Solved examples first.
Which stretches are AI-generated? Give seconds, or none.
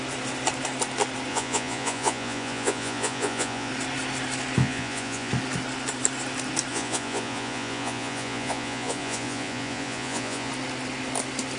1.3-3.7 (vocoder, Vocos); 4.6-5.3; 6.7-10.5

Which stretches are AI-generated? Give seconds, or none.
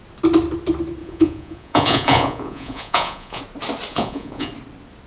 1.0-3.4 (vocoder, Vocos); 3.9-4.5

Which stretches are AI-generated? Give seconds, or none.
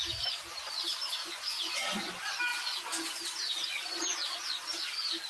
1.2-1.8 (vocoder, Vocos)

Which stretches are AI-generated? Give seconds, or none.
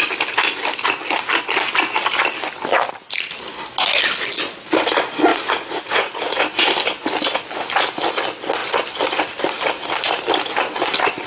5.3-6.4 (vocoder, Vocos)